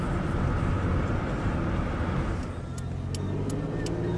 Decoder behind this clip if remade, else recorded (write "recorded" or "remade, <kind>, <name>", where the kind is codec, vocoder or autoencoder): recorded